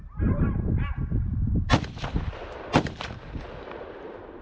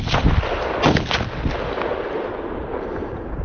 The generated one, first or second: first